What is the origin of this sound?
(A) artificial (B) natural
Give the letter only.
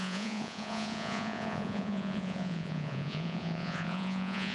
A